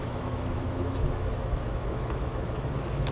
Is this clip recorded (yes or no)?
no